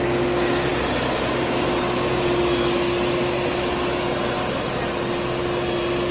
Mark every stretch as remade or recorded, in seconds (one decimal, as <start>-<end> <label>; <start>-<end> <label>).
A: 0.0-6.1 recorded